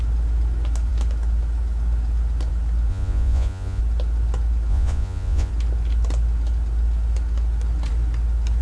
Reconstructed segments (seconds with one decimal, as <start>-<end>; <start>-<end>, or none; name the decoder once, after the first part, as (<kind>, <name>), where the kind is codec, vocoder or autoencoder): 2.9-3.8 (vocoder, Vocos); 4.7-5.5